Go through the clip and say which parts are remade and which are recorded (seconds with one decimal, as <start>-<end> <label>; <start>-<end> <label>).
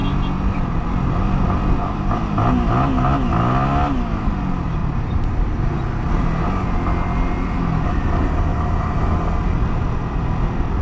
0.0-4.8 recorded; 4.8-5.4 remade; 5.4-8.5 recorded; 8.5-9.0 remade; 9.0-10.8 recorded